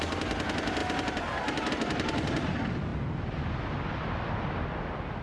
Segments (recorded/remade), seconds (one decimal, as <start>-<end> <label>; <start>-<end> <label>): 0.0-5.2 recorded